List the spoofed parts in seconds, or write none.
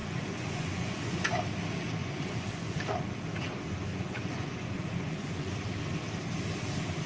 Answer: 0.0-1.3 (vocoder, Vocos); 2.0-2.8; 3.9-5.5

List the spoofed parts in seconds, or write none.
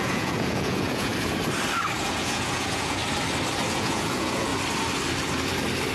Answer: 0.0-1.1 (vocoder, Vocos); 2.0-3.0; 3.7-4.5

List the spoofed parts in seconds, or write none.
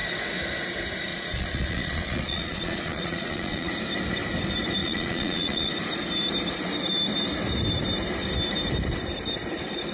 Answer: 1.1-3.7 (vocoder, Vocos); 4.8-5.7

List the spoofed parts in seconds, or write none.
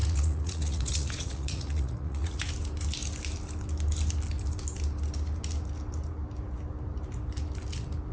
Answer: 0.0-2.5 (vocoder, Vocos)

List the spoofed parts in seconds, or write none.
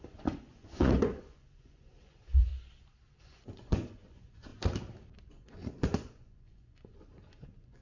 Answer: 0.0-2.5 (vocoder, Vocos); 3.2-4.5; 5.3-7.8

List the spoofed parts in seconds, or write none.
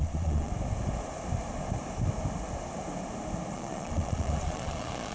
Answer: 0.0-0.5 (vocoder, Vocos); 3.5-5.1